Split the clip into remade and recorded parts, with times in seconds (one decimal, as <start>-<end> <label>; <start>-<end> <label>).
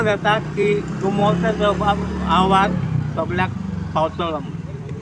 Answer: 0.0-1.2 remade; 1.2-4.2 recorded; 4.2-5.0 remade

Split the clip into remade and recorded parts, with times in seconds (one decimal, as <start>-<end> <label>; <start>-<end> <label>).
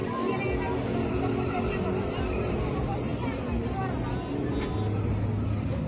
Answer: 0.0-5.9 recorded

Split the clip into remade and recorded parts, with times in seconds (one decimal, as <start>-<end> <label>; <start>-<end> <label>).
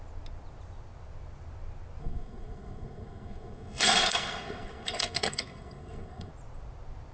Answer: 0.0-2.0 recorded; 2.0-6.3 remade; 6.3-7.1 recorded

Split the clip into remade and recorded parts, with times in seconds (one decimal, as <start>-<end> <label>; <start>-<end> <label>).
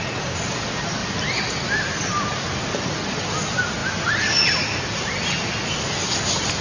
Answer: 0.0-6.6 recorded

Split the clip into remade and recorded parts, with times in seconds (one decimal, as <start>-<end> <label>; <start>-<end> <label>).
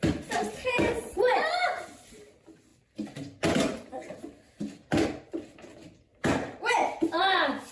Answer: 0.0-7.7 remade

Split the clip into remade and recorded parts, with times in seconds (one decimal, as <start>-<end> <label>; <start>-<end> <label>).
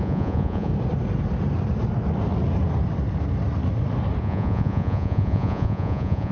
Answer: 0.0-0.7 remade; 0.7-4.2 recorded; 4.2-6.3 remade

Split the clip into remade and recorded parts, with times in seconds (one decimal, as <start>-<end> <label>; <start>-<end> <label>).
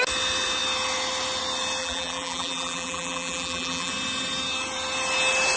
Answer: 0.0-1.8 recorded; 1.8-3.9 remade; 3.9-5.6 recorded